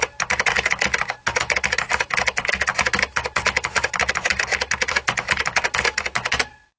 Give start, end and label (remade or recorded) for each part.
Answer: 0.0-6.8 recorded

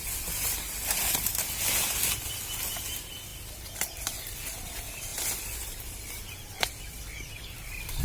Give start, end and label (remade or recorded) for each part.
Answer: 0.0-8.0 remade

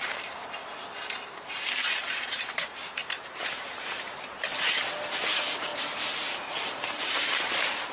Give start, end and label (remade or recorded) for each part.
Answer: 0.0-0.4 remade; 0.4-1.2 recorded; 1.2-5.7 remade; 5.7-6.6 recorded; 6.6-7.9 remade

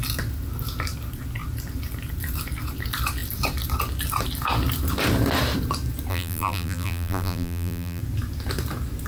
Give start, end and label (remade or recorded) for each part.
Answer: 0.0-6.1 recorded; 6.1-8.0 remade; 8.0-9.1 recorded

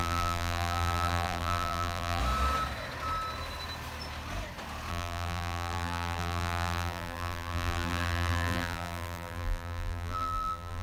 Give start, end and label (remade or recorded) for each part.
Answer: 0.0-2.2 remade; 2.2-4.9 recorded; 4.9-10.8 remade

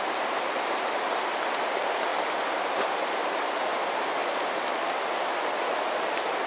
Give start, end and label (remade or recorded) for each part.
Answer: 0.0-2.1 recorded; 2.1-3.1 remade; 3.1-4.2 recorded; 4.2-5.5 remade; 5.5-6.5 recorded

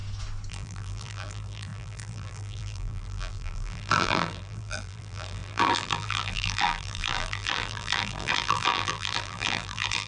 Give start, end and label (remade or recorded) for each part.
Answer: 0.0-0.5 recorded; 0.5-10.1 remade